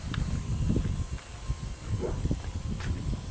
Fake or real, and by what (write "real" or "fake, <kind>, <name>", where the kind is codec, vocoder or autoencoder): real